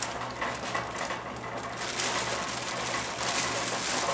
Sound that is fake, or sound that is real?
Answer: real